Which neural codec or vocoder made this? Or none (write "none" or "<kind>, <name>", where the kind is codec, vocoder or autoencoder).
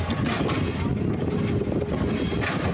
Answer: none